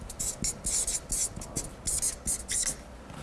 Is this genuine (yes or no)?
yes